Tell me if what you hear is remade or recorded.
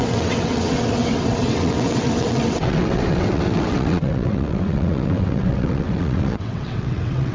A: remade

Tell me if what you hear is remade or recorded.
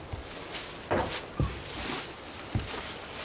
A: recorded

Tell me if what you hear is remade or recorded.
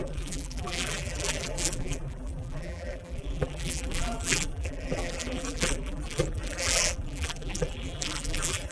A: remade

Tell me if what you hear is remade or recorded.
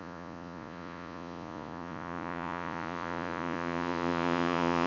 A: remade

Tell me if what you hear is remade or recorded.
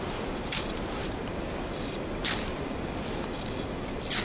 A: recorded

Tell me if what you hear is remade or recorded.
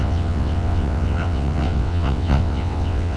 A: remade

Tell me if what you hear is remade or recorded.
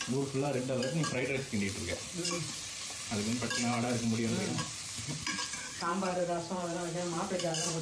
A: remade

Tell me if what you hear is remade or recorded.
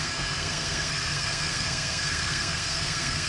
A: remade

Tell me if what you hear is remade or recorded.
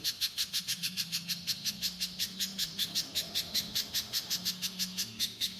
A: remade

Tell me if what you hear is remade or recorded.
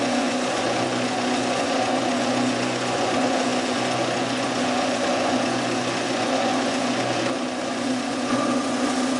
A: remade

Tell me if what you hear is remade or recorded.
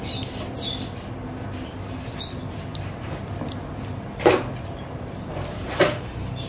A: remade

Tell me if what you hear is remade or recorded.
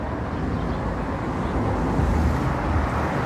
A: recorded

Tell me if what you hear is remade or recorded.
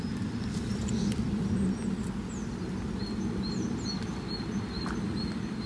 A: recorded